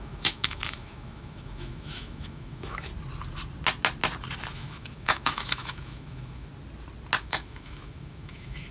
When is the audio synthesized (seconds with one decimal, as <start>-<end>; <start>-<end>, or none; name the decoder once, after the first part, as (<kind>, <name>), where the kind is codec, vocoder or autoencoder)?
0.0-2.9 (autoencoder, DAC-VAE); 4.5-6.5; 7.2-8.7